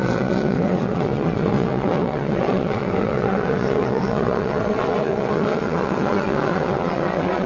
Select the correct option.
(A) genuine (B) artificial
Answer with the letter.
B